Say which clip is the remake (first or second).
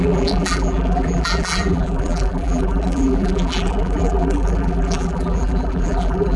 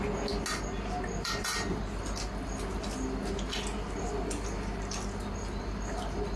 first